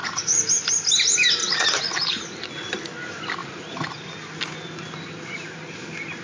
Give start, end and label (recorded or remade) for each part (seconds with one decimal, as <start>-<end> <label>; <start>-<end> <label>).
0.0-0.5 remade; 0.5-1.4 recorded; 1.4-2.2 remade; 2.2-3.4 recorded; 3.4-3.9 remade; 3.9-6.2 recorded